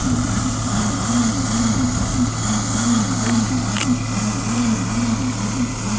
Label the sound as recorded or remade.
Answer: recorded